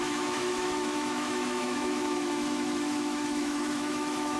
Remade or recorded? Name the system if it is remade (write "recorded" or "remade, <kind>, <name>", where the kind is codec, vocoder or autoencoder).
remade, autoencoder, DAC-VAE